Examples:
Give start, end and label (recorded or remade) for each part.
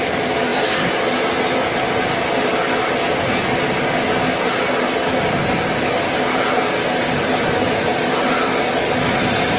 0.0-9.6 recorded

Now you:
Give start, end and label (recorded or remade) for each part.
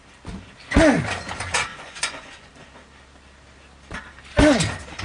0.0-1.7 recorded; 1.7-2.5 remade; 2.5-5.0 recorded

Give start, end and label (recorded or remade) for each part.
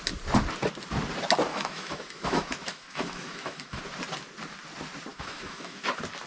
0.0-1.5 recorded; 1.5-3.8 remade; 3.8-5.1 recorded; 5.1-5.8 remade; 5.8-6.3 recorded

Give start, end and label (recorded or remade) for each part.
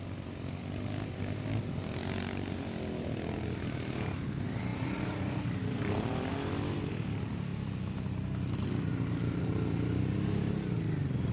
0.0-4.7 recorded; 4.7-6.3 remade; 6.3-11.3 recorded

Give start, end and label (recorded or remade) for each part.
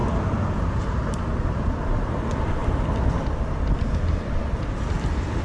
0.0-2.1 remade; 2.1-5.4 recorded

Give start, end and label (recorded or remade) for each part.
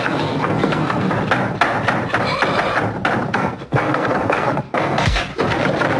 0.0-1.1 remade; 1.1-3.3 recorded; 3.3-5.3 remade; 5.3-6.0 recorded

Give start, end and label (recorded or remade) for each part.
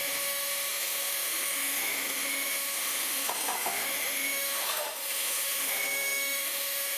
0.0-7.0 remade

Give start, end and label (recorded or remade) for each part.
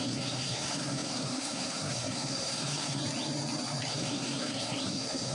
0.0-3.0 remade; 3.0-3.9 recorded; 3.9-5.3 remade